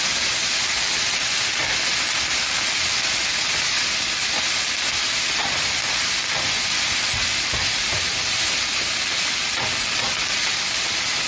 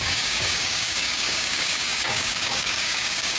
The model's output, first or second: second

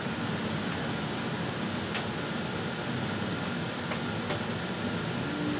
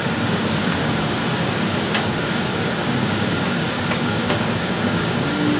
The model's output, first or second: second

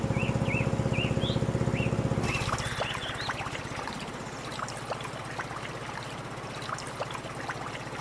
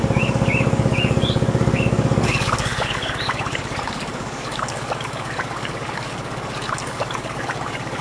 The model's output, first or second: second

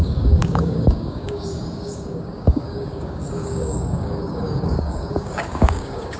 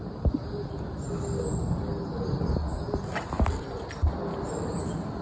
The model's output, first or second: first